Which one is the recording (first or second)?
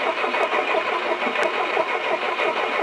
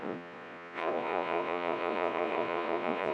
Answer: first